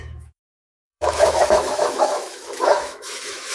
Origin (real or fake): fake